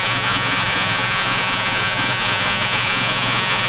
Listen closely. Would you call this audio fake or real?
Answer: fake